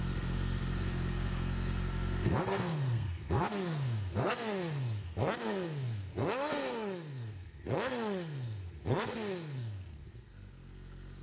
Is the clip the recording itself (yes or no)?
no